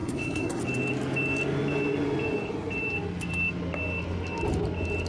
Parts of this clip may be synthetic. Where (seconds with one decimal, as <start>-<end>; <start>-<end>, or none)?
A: 0.0-0.6